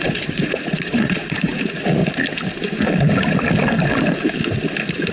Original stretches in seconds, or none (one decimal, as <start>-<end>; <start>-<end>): 2.0-5.1